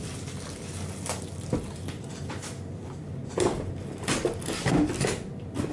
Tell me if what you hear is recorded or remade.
recorded